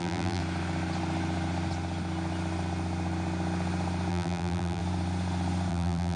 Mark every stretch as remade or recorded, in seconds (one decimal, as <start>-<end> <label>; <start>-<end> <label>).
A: 0.0-0.4 remade; 0.4-4.1 recorded; 4.1-4.8 remade; 4.8-5.7 recorded; 5.7-6.2 remade